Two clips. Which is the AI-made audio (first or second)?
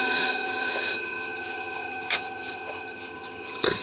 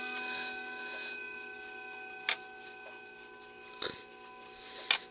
first